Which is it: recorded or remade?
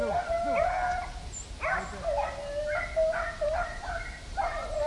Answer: recorded